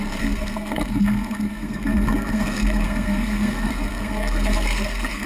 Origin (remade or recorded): remade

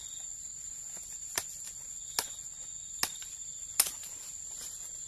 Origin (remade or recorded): recorded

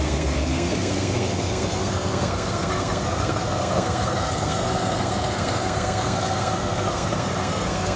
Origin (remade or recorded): remade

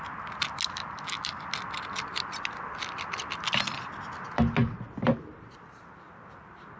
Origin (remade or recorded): recorded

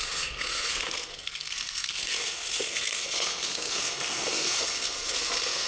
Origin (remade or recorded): remade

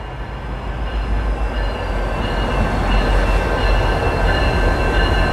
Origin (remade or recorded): recorded